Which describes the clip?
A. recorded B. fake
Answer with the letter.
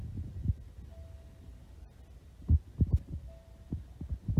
A